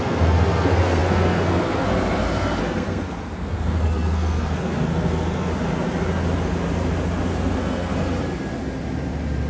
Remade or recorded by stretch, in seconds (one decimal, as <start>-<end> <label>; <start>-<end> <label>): 0.0-5.5 remade; 5.5-7.2 recorded; 7.2-7.9 remade; 7.9-9.5 recorded